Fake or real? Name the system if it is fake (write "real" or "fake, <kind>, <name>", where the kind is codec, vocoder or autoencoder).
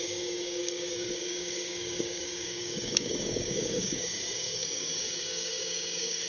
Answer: fake, codec, DAC